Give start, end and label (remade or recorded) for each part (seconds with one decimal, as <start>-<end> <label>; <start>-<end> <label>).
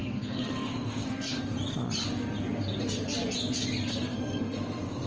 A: 0.0-1.4 remade; 1.4-3.9 recorded; 3.9-5.1 remade